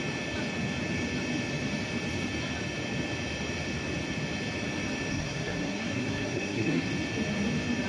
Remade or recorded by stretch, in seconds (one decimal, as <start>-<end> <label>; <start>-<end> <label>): 0.0-5.1 recorded; 5.1-6.9 remade; 6.9-7.9 recorded